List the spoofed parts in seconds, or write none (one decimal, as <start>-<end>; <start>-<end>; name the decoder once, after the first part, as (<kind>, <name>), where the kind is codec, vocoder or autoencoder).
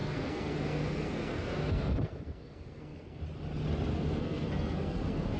0.0-3.2 (codec, SNAC); 3.9-5.4